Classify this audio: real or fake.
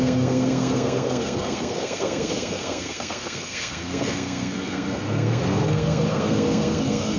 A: fake